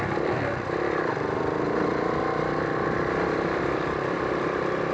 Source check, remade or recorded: remade